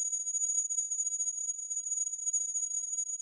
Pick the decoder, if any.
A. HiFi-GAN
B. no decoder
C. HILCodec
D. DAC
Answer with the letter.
C